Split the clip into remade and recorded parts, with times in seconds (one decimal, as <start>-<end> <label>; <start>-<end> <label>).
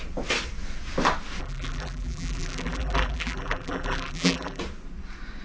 0.0-1.4 recorded; 1.4-4.6 remade; 4.6-5.4 recorded